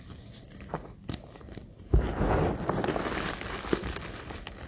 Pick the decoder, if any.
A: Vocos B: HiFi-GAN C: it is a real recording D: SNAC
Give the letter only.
C